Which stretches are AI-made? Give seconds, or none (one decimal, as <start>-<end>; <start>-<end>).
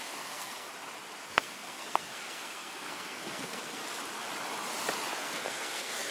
0.0-0.7; 1.3-3.8; 5.2-6.1